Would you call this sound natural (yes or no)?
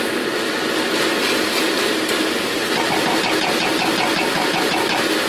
yes